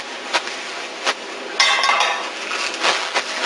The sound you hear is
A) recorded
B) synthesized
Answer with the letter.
A